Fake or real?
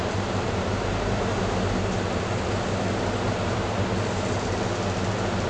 real